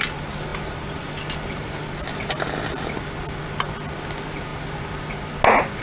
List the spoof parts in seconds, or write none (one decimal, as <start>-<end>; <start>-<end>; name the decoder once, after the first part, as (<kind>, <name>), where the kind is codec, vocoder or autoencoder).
none